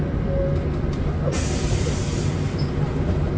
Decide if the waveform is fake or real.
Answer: real